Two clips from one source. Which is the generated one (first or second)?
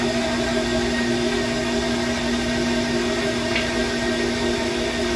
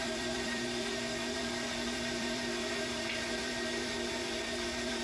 second